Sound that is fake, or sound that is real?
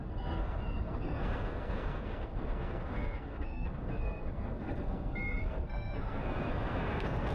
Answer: fake